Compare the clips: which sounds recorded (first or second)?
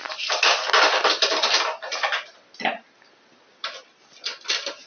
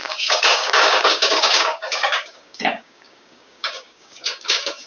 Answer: first